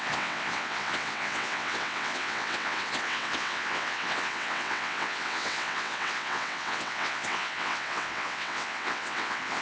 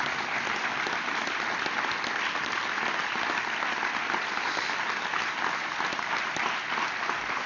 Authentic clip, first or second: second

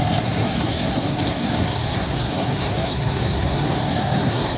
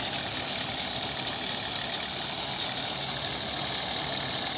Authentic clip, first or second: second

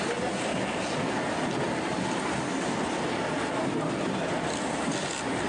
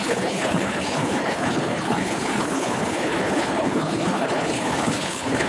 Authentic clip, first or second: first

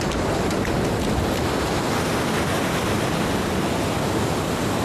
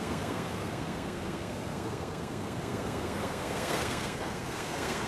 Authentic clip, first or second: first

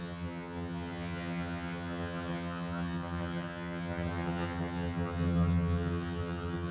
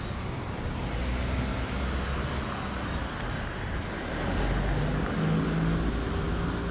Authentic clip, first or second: second